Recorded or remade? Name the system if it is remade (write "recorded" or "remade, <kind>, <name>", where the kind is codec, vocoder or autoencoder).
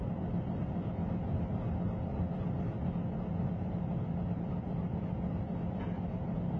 recorded